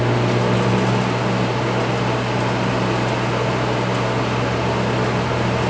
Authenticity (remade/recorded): recorded